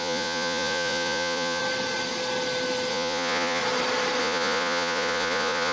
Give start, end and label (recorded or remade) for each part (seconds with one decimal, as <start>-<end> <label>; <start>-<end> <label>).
0.0-1.6 remade; 1.6-2.9 recorded; 2.9-3.6 remade; 3.6-4.2 recorded; 4.2-5.7 remade